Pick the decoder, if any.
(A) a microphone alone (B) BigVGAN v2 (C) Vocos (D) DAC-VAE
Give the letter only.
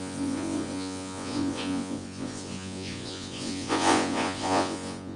C